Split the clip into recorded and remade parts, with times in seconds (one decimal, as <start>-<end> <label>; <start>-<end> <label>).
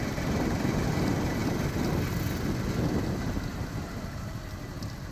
0.0-5.1 recorded